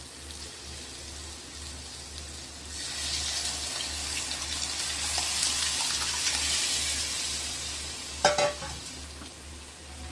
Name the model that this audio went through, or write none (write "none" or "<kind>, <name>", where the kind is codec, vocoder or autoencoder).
none